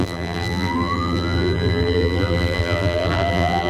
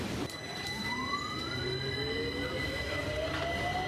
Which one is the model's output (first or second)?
first